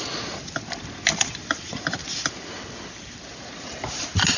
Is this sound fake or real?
real